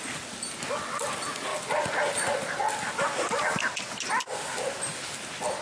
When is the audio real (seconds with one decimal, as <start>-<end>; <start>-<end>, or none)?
0.0-5.6